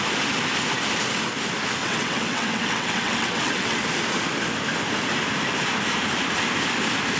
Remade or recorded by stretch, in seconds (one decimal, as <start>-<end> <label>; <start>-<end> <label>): 0.0-1.8 recorded; 1.8-3.8 remade; 3.8-7.2 recorded